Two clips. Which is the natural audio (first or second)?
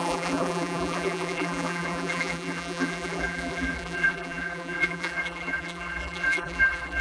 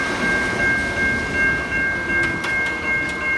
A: second